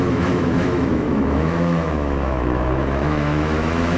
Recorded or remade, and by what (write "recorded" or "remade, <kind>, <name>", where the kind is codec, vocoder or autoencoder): remade, autoencoder, DAC-VAE